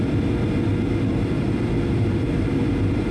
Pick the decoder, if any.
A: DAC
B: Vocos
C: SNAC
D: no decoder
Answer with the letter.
D